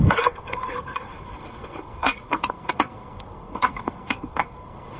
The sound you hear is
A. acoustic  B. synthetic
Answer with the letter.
B